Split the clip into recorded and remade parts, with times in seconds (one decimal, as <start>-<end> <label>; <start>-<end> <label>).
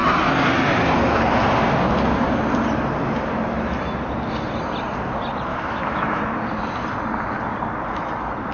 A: 0.0-5.5 recorded; 5.5-6.2 remade; 6.2-8.5 recorded